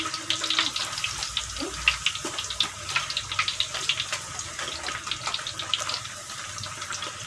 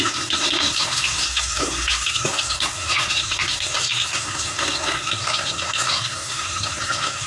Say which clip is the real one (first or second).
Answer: first